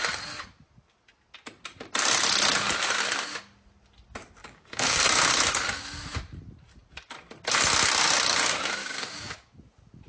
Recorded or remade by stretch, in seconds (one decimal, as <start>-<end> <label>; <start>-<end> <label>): 0.0-4.4 recorded; 4.4-5.0 remade; 5.0-8.8 recorded; 8.8-9.5 remade; 9.5-10.1 recorded